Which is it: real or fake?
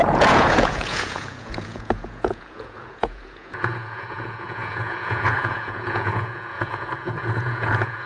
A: fake